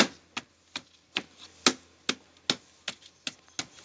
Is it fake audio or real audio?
real